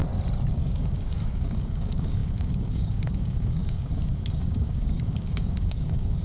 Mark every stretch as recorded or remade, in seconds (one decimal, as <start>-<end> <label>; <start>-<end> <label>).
0.0-0.5 recorded; 0.5-6.2 remade